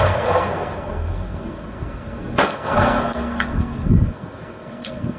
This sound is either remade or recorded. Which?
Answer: remade